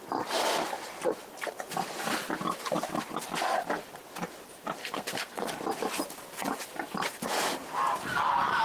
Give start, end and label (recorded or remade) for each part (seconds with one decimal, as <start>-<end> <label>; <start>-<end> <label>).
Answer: 0.0-4.8 recorded; 4.8-5.5 remade; 5.5-8.6 recorded